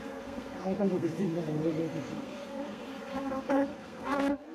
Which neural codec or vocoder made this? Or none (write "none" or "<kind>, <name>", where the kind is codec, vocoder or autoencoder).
codec, SNAC